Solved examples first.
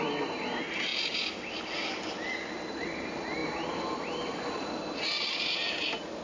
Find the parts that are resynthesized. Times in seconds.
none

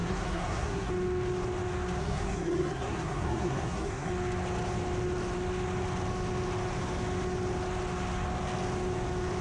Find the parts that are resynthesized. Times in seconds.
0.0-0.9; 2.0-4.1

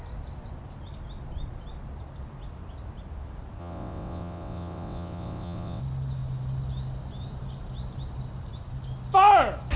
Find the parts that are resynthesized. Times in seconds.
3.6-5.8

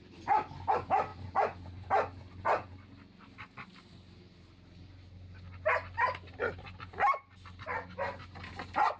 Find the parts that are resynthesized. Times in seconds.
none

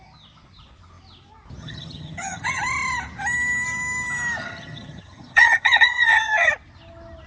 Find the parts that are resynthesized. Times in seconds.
1.6-2.6; 4.4-6.5

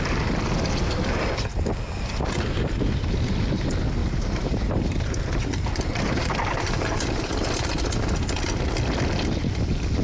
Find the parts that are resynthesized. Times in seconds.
4.0-5.2

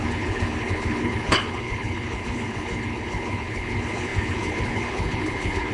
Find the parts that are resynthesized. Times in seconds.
0.0-5.7